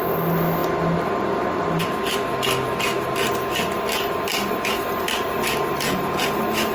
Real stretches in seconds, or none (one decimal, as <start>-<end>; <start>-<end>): 0.0-6.7

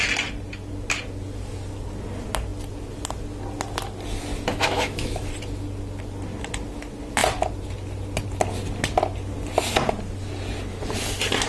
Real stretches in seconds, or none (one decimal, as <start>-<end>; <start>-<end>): 0.0-4.5; 5.3-11.5

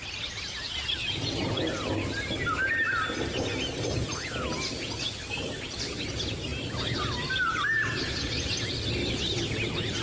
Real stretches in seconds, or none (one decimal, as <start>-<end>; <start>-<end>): 0.0-10.0

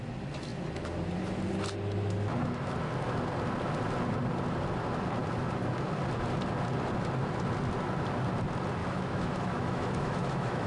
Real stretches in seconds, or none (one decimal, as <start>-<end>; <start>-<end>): 0.0-8.8

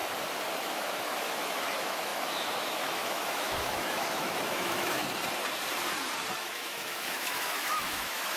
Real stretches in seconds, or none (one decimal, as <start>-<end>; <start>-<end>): 0.0-0.6; 5.0-6.4